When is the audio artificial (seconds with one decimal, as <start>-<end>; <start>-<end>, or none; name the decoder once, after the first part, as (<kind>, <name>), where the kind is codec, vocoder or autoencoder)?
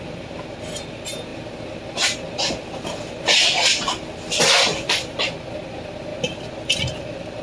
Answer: 0.0-6.1 (vocoder, BigVGAN v2); 7.0-7.4